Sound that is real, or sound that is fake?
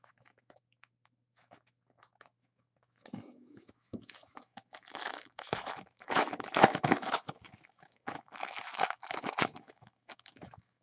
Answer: fake